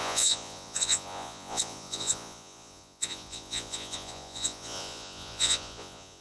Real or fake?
fake